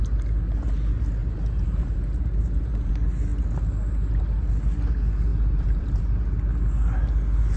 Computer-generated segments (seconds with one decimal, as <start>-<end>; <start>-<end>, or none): 1.2-2.9; 5.3-6.0